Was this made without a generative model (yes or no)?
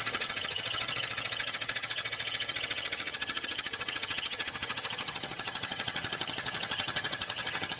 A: no